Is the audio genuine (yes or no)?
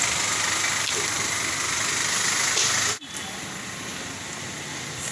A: yes